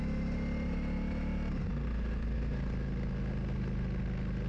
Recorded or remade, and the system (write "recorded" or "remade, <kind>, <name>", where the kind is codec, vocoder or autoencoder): recorded